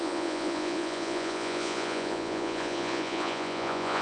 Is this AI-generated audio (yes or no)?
yes